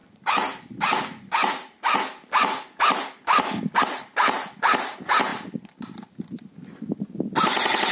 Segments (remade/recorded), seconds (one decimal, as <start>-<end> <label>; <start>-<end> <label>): 0.0-7.9 recorded